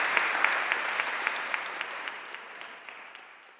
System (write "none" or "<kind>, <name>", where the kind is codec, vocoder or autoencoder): none